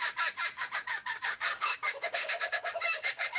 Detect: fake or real fake